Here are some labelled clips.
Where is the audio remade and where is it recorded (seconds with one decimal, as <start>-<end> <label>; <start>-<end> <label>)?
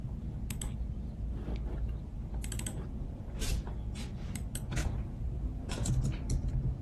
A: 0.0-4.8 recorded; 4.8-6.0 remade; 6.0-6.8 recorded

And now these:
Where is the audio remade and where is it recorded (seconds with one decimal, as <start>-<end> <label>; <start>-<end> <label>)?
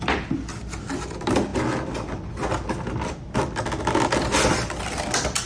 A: 0.0-5.5 recorded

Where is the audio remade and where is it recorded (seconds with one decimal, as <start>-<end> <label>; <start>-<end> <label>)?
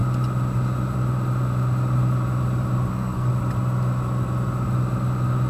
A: 0.0-2.9 recorded; 2.9-3.3 remade; 3.3-5.5 recorded